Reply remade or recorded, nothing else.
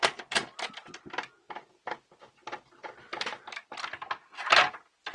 recorded